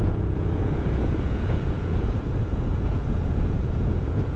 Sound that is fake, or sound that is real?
fake